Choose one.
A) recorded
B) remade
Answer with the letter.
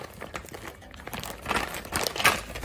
B